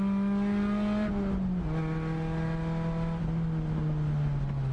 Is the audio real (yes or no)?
yes